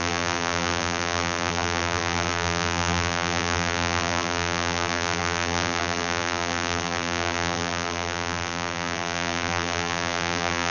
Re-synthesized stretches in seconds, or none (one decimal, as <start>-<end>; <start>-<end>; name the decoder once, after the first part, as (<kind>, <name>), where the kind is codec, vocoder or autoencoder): 0.0-10.7 (vocoder, BigVGAN v2)